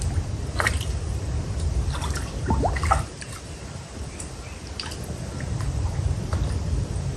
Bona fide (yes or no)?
no